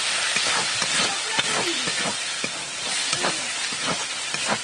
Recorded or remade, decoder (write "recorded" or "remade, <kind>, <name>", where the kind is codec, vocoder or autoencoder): recorded